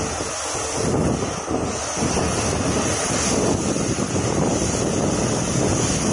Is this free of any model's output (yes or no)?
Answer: yes